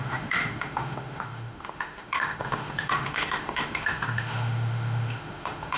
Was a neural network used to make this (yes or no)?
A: yes